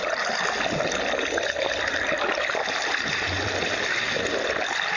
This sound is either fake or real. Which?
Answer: real